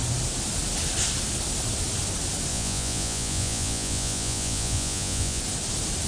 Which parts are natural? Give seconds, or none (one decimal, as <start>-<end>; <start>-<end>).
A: 0.0-2.5; 5.4-6.1